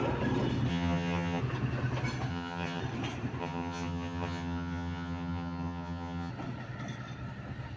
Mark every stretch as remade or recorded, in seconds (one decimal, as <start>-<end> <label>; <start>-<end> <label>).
0.0-0.7 recorded; 0.7-1.4 remade; 1.4-2.3 recorded; 2.3-2.8 remade; 2.8-3.4 recorded; 3.4-6.3 remade; 6.3-7.8 recorded